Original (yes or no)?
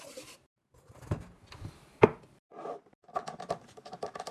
yes